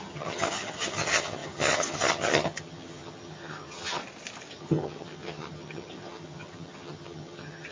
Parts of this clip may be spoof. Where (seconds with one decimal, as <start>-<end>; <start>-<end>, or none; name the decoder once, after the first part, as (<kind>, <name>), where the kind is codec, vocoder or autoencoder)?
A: 0.0-4.0 (vocoder, HiFi-GAN); 4.5-7.7